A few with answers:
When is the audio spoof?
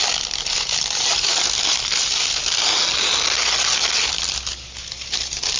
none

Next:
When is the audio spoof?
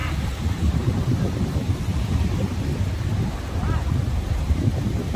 0.0-1.2 (vocoder, BigVGAN v2); 1.9-5.2